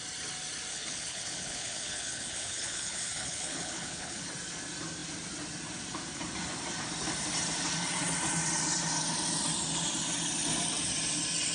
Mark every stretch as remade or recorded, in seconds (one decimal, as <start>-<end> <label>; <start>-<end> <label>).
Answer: 0.0-0.7 recorded; 0.7-4.3 remade; 4.3-11.5 recorded